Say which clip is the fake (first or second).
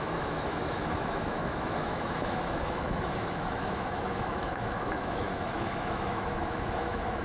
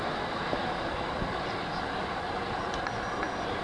first